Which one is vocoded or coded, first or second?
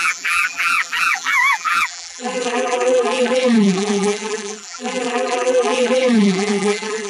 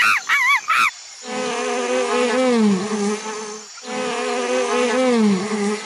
first